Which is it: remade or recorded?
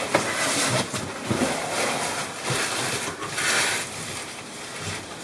recorded